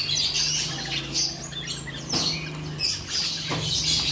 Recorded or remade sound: recorded